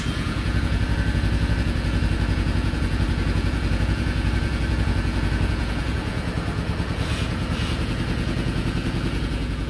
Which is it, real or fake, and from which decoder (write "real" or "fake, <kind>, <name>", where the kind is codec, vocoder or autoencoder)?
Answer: fake, vocoder, Vocos